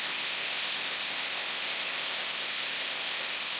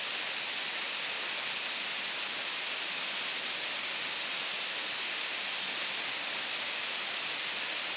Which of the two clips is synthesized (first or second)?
first